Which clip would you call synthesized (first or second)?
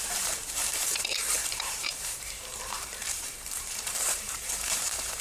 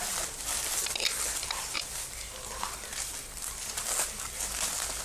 first